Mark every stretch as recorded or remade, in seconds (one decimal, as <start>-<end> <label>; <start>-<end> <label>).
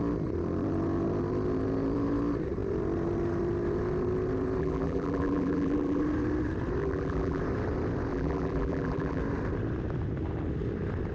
0.0-4.6 recorded; 4.6-6.0 remade; 6.0-6.8 recorded; 6.8-7.4 remade; 7.4-8.1 recorded; 8.1-9.2 remade; 9.2-11.1 recorded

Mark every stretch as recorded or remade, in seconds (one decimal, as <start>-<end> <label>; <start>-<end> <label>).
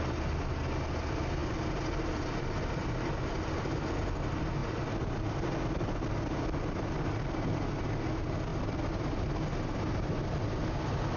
0.0-11.2 recorded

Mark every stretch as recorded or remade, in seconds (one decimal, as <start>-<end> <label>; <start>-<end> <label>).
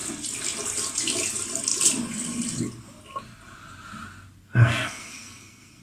0.0-4.4 recorded; 4.4-5.8 remade